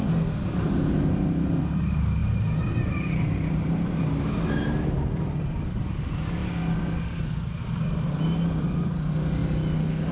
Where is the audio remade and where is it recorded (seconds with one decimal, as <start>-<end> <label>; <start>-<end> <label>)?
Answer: 0.0-2.2 recorded; 2.2-4.0 remade; 4.0-10.1 recorded